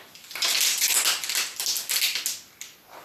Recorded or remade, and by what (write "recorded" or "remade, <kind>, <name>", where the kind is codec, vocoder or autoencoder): recorded